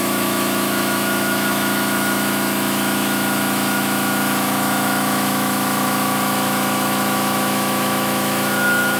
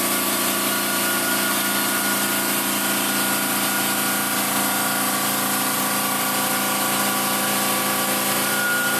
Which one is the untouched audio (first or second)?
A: second